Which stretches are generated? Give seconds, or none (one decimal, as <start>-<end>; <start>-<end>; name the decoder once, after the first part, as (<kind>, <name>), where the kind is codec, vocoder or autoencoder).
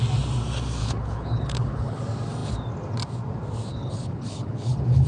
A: 0.8-2.0 (codec, HILCodec); 3.7-5.1